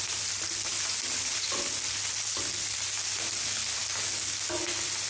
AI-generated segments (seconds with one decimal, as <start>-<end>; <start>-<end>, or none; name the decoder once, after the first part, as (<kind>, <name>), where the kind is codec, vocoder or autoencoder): none